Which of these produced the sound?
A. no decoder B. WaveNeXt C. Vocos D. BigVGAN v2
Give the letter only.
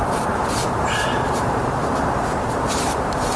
D